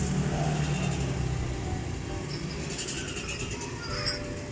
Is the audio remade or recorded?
recorded